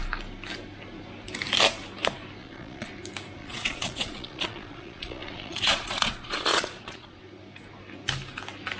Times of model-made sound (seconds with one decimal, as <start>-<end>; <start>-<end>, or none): 2.4-2.9; 3.4-7.2